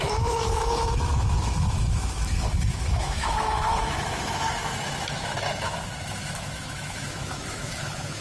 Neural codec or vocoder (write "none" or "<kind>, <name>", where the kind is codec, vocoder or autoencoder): autoencoder, DAC-VAE